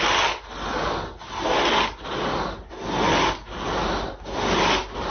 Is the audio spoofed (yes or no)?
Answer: no